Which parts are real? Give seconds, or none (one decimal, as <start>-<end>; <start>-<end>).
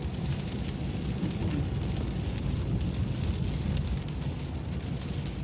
0.0-5.4